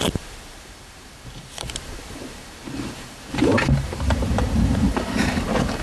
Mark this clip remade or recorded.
remade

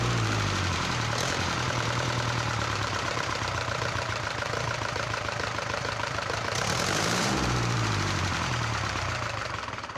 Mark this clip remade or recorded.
remade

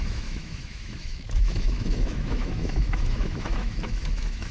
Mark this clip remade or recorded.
remade